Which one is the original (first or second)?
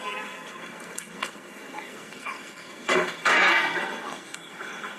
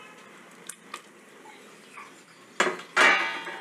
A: second